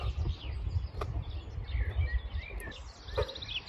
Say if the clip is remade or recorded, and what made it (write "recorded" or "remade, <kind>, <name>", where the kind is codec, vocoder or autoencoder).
recorded